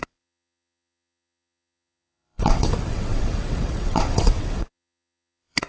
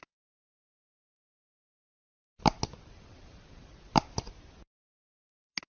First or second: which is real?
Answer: second